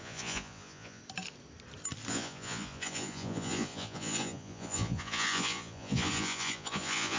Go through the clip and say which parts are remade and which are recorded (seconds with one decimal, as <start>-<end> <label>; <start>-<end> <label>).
0.0-1.0 remade; 1.0-2.1 recorded; 2.1-7.2 remade